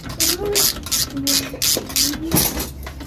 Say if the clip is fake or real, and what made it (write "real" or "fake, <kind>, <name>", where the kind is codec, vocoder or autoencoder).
real